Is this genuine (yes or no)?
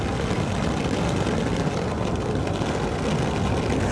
yes